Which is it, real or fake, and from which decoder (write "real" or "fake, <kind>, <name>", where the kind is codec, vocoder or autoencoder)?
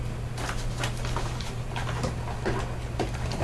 real